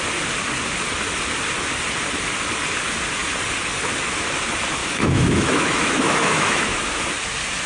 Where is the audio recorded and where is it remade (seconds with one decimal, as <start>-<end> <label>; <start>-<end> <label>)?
0.0-4.8 recorded; 4.8-7.0 remade; 7.0-7.7 recorded